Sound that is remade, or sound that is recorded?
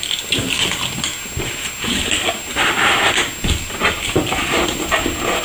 recorded